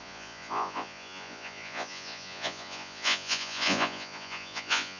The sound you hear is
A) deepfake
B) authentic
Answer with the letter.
A